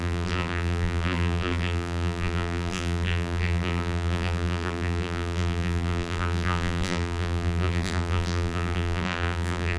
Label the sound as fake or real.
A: fake